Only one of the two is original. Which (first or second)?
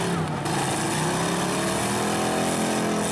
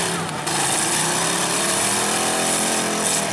first